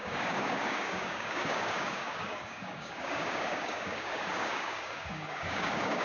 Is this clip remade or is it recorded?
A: remade